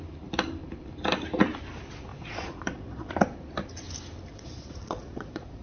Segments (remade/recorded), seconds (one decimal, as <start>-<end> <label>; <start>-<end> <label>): 0.0-2.1 recorded; 2.1-3.1 remade; 3.1-4.3 recorded; 4.3-5.6 remade